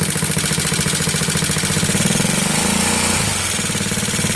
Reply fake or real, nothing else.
real